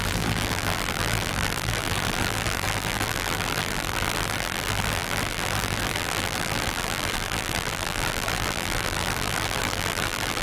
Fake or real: fake